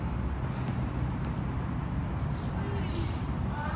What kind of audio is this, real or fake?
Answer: real